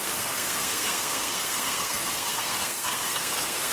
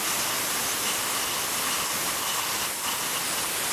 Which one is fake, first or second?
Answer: first